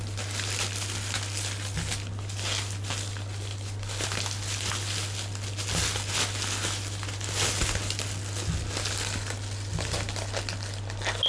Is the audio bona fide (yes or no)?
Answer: yes